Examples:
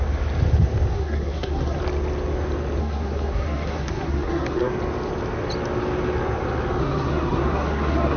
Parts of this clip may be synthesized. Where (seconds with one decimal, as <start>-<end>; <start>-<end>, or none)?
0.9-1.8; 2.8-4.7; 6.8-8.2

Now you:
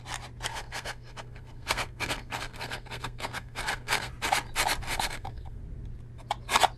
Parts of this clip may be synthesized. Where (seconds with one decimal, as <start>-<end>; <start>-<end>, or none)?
0.5-4.1; 4.9-5.6

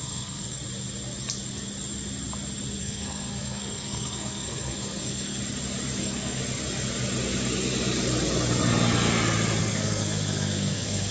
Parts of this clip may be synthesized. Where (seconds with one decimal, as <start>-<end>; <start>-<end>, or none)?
0.0-0.6; 2.8-5.4; 6.0-6.4; 9.6-11.1